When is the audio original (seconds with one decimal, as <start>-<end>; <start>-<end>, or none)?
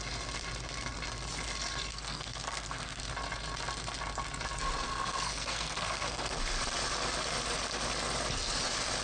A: 0.0-1.9; 3.0-4.9; 6.4-9.0